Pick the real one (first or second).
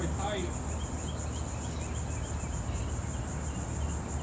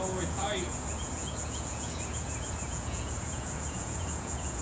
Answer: first